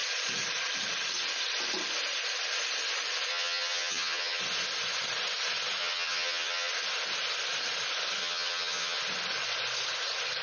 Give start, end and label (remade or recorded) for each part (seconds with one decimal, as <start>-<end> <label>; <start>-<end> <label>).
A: 0.0-3.3 recorded; 3.3-4.4 remade; 4.4-5.8 recorded; 5.8-6.7 remade; 6.7-8.2 recorded; 8.2-9.0 remade; 9.0-10.4 recorded